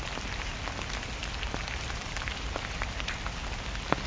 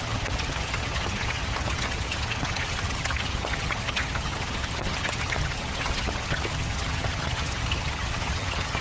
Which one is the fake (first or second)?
second